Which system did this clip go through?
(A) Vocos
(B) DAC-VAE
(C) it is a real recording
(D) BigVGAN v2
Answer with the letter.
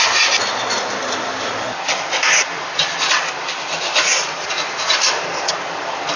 C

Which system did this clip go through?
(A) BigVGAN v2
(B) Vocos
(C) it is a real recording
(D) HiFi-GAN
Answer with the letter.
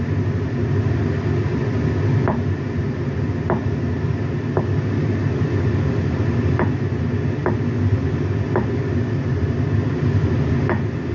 C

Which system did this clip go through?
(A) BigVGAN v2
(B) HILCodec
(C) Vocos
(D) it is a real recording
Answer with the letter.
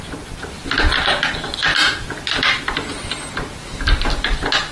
D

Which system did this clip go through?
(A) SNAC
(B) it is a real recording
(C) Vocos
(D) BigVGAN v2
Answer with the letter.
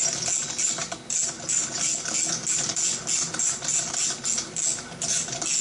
B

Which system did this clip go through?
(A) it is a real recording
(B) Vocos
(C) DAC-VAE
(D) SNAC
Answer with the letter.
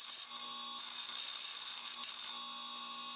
A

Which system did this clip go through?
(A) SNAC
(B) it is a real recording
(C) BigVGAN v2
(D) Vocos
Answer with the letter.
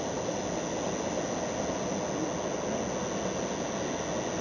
B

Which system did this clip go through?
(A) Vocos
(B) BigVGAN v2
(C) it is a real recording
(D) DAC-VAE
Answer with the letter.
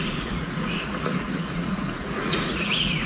A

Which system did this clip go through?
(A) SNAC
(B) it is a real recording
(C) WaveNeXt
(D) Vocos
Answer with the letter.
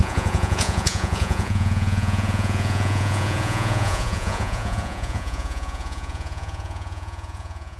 D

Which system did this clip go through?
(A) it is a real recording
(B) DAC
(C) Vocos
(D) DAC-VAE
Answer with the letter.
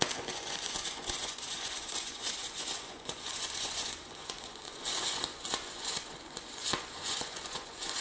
C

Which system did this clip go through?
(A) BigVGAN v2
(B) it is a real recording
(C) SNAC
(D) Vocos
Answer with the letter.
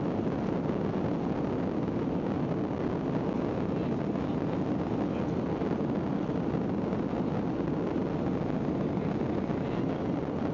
B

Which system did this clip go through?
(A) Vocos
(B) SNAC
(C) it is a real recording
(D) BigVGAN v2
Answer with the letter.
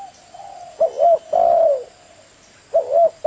C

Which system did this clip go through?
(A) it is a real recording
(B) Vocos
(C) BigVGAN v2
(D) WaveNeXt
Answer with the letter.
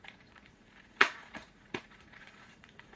B